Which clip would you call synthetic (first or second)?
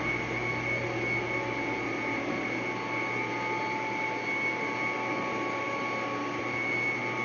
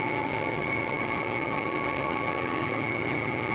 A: second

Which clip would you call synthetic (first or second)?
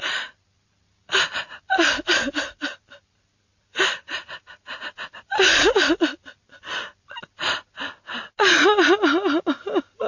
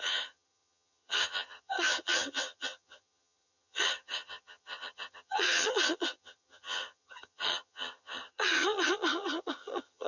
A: second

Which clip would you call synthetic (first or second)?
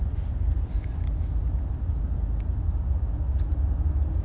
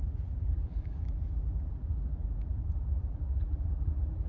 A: second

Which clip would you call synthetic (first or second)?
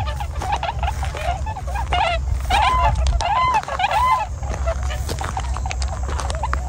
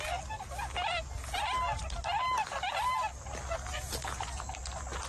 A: first